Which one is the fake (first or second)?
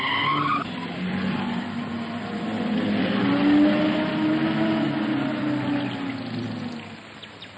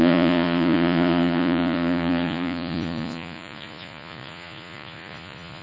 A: second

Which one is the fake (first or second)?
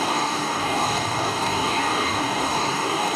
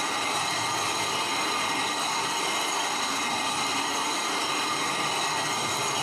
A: first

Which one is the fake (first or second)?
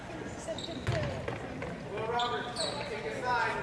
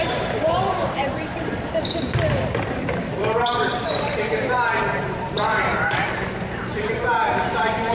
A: second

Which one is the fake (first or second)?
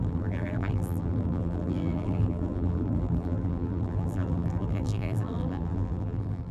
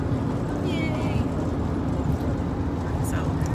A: first